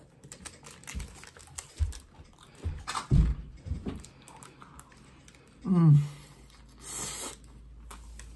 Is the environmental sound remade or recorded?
recorded